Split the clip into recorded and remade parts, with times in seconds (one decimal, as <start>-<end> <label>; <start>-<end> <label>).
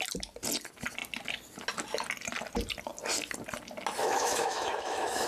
0.0-4.0 recorded; 4.0-5.3 remade